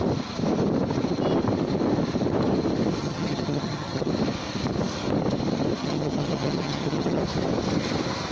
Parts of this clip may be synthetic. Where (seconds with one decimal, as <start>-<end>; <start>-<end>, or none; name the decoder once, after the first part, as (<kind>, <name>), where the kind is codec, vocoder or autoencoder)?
3.0-4.1 (vocoder, HiFi-GAN); 5.8-7.2